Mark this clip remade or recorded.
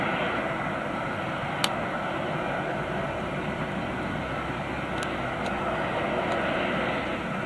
recorded